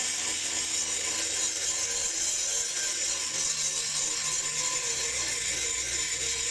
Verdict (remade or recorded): recorded